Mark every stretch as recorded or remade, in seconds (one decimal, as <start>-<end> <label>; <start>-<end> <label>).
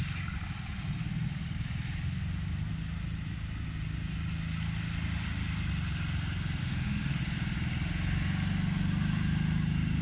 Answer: 0.0-6.6 recorded; 6.6-7.2 remade; 7.2-10.0 recorded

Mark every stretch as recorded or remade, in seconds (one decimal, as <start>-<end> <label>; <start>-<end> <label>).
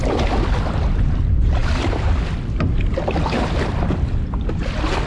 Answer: 0.0-5.1 recorded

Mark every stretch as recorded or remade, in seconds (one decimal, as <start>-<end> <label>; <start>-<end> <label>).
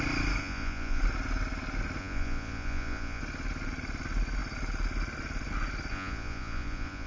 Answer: 0.0-0.4 recorded; 0.4-1.0 remade; 1.0-2.0 recorded; 2.0-3.2 remade; 3.2-5.9 recorded; 5.9-7.1 remade